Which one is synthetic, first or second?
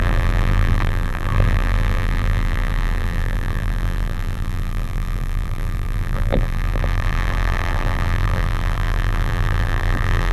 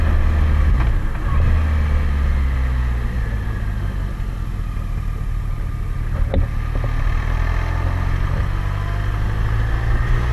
first